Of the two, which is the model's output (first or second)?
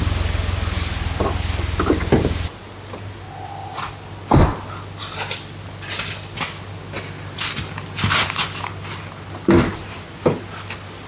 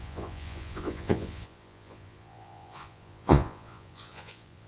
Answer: second